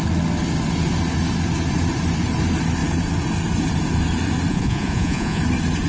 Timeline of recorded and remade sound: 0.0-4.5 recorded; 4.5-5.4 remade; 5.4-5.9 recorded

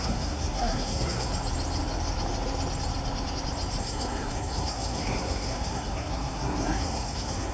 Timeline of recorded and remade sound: 0.0-1.3 remade; 1.3-3.8 recorded; 3.8-7.5 remade

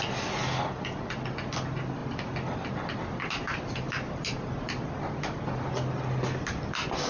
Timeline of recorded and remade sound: 0.0-7.1 recorded

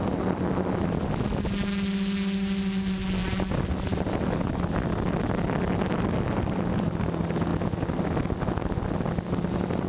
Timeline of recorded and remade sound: 0.0-9.9 recorded